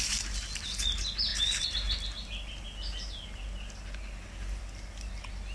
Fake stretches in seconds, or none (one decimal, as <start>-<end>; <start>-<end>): none